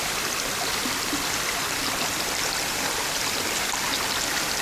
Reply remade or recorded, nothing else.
recorded